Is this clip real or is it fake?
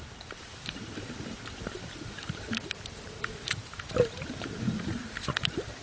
fake